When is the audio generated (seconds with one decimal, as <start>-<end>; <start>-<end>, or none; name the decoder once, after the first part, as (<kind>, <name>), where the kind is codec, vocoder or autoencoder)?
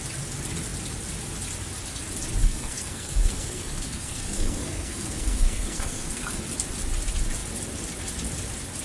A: 2.4-6.4 (codec, SNAC)